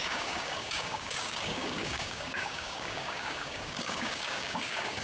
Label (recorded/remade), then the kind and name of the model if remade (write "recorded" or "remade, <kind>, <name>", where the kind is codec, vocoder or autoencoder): remade, codec, DAC